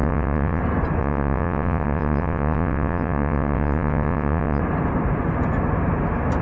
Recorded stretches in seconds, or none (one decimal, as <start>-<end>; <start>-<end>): 0.6-1.0; 4.6-6.4